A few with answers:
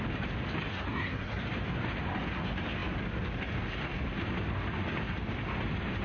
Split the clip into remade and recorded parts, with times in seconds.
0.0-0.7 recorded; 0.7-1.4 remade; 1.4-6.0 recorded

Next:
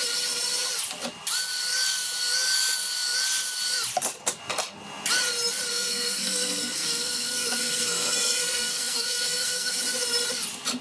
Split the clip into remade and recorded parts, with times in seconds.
0.0-5.7 recorded; 5.7-9.8 remade; 9.8-10.8 recorded

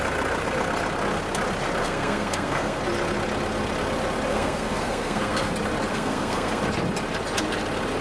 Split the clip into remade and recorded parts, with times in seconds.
0.0-1.8 recorded; 1.8-2.8 remade; 2.8-4.3 recorded; 4.3-5.5 remade; 5.5-5.9 recorded; 5.9-6.6 remade; 6.6-8.0 recorded